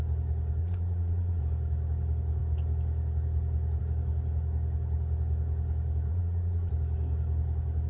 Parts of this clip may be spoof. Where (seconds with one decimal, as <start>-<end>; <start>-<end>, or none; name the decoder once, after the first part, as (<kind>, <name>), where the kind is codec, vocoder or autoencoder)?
0.6-1.4 (vocoder, Vocos); 6.1-6.7